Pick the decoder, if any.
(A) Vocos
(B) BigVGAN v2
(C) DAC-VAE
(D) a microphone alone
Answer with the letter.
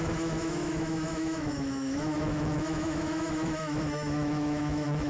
C